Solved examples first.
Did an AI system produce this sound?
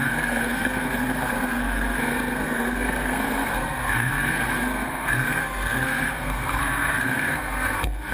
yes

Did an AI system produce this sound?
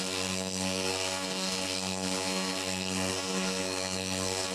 yes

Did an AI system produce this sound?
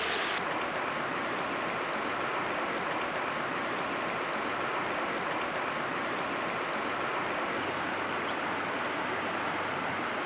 no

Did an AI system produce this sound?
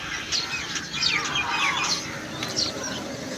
no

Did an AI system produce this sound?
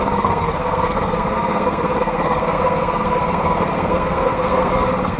yes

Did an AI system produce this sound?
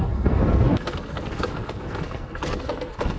yes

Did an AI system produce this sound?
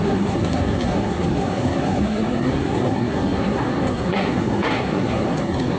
yes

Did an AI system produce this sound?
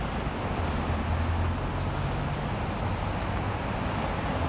no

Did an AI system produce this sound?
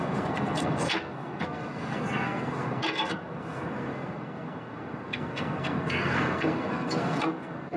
yes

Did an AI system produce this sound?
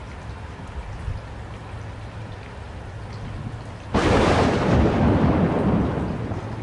no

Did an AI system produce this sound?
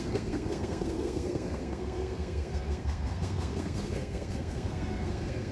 yes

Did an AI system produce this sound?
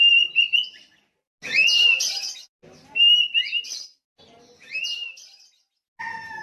no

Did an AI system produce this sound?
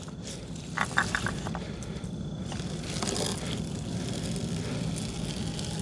no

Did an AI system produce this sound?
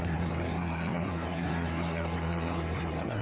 yes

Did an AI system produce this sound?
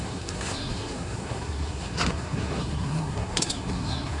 yes